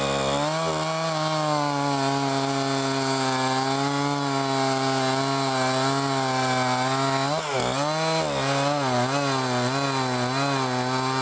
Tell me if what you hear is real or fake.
real